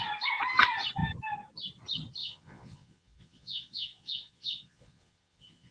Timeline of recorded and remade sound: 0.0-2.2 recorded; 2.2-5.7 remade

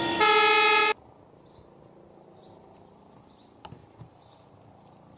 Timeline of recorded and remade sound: 0.0-5.2 recorded

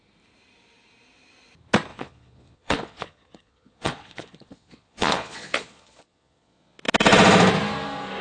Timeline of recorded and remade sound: 0.0-1.9 recorded; 1.9-6.8 remade; 6.8-8.2 recorded

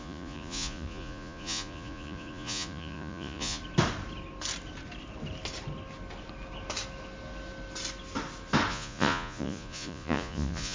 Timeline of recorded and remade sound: 0.0-3.6 remade; 3.6-8.7 recorded; 8.7-10.7 remade

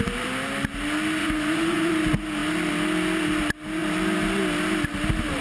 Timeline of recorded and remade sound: 0.0-1.2 recorded; 1.2-1.9 remade; 1.9-5.4 recorded

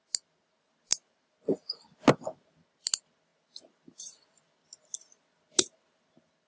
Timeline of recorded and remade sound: 0.0-6.5 recorded